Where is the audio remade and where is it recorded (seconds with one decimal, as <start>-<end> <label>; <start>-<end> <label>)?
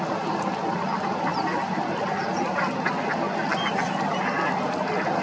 0.0-5.2 recorded